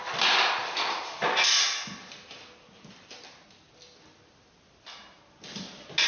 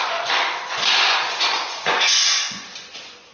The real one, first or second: first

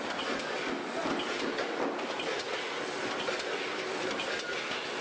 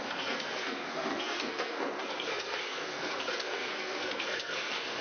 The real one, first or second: first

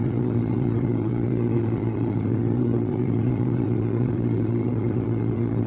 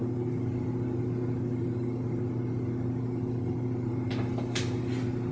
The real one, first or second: second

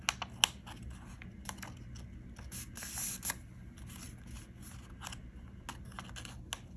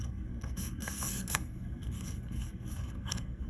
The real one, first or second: first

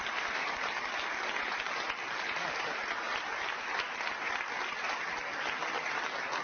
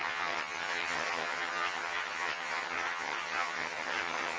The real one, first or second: first